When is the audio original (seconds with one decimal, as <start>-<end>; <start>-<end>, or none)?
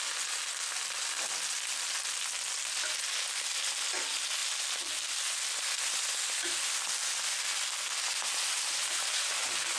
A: 0.0-9.8